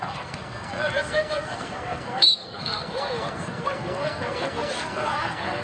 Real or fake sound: fake